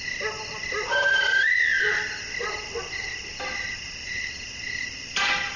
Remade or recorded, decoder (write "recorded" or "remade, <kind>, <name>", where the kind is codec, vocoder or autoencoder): recorded